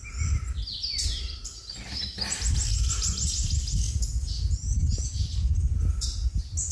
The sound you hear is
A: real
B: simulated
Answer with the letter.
A